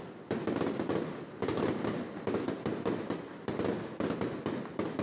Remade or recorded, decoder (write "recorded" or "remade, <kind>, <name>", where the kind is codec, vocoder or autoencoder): recorded